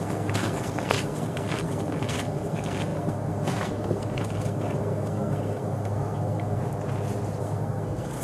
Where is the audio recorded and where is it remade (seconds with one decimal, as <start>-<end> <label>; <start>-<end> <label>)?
0.0-6.6 remade; 6.6-7.4 recorded; 7.4-8.2 remade